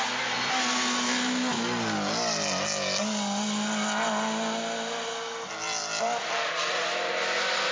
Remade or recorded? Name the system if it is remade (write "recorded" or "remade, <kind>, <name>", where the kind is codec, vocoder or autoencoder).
recorded